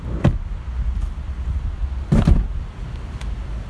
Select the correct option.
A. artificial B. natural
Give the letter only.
B